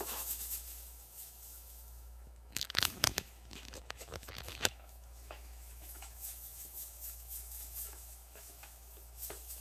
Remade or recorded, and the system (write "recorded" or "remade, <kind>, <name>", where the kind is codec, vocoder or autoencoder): remade, autoencoder, DAC-VAE